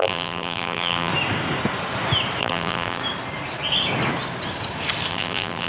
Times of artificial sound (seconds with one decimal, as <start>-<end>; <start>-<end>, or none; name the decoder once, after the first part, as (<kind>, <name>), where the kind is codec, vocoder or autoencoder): 0.0-1.1 (vocoder, BigVGAN v2); 2.4-3.0; 5.1-5.7